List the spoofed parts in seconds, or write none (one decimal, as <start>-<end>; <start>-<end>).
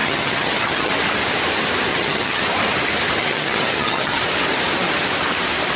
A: 0.0-0.9; 1.9-2.4; 3.2-4.2